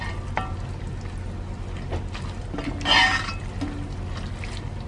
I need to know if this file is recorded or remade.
recorded